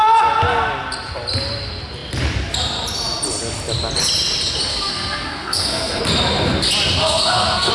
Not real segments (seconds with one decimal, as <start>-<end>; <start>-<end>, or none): 4.7-6.0; 7.0-7.7